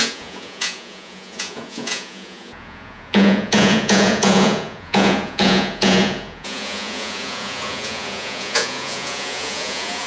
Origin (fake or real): fake